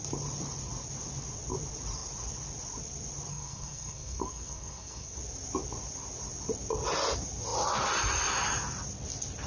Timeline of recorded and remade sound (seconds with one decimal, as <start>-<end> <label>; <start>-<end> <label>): 0.0-3.3 recorded; 3.3-5.2 remade; 5.2-9.5 recorded